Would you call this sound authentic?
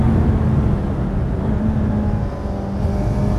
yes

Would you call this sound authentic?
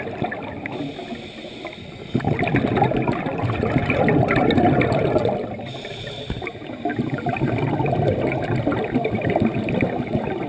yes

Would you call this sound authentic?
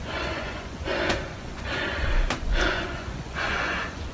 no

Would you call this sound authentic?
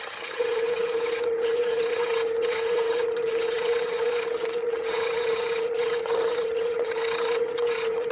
no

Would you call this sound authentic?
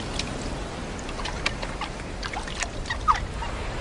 yes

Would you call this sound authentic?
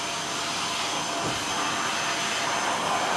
yes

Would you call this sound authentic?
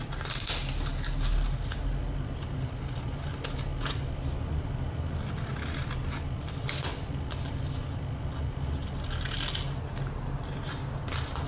yes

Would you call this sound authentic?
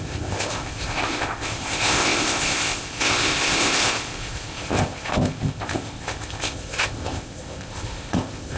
no